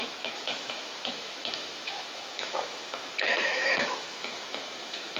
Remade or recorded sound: remade